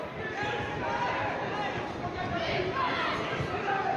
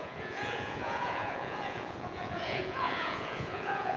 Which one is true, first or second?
first